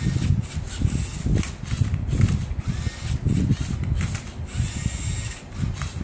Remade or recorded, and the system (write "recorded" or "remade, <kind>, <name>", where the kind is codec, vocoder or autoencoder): recorded